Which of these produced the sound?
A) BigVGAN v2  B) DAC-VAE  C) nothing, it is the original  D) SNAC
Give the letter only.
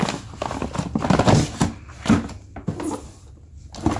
C